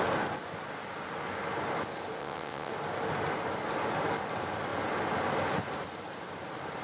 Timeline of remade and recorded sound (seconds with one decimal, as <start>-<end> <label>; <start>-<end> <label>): 0.0-2.2 recorded; 2.2-2.7 remade; 2.7-6.8 recorded